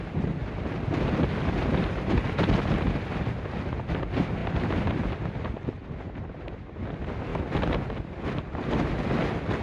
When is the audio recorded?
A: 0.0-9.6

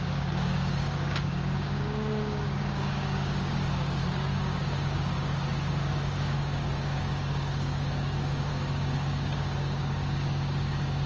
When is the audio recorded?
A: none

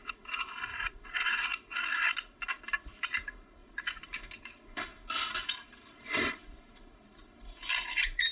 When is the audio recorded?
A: 1.5-3.2; 3.6-4.4; 4.9-5.5

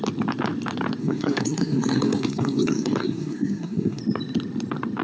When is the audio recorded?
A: 0.0-1.0; 4.0-5.0

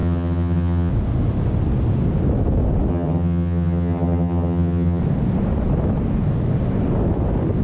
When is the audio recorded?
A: 0.9-2.9; 5.0-7.6

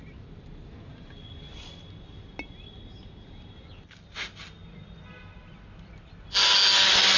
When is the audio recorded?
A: 0.0-7.2